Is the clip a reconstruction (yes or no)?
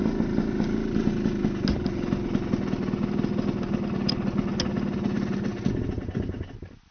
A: no